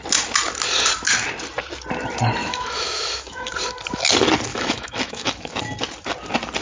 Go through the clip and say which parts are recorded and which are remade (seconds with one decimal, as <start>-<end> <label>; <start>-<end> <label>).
0.0-2.4 recorded; 2.4-3.5 remade; 3.5-4.5 recorded; 4.5-5.6 remade; 5.6-6.6 recorded